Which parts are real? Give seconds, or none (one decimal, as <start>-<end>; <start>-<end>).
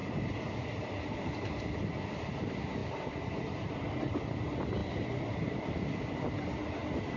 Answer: 1.6-4.8; 6.5-7.2